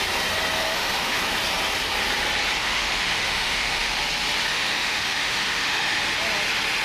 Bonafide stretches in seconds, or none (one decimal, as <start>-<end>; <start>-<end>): 0.0-0.6; 1.2-2.6; 4.0-4.5; 6.0-6.8